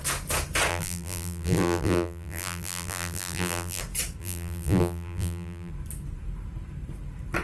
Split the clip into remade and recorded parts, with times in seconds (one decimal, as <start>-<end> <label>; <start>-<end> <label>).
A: 0.0-0.7 recorded; 0.7-3.8 remade; 3.8-4.2 recorded; 4.2-5.7 remade; 5.7-7.4 recorded